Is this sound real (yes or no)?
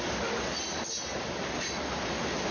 yes